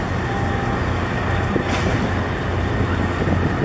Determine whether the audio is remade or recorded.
recorded